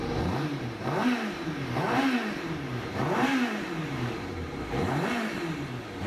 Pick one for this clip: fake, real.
fake